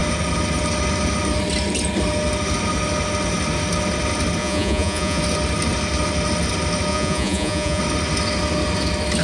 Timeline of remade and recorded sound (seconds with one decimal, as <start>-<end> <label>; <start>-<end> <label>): 0.0-4.4 recorded; 4.4-5.2 remade; 5.2-6.9 recorded; 6.9-7.8 remade; 7.8-9.2 recorded